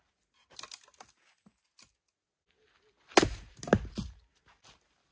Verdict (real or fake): real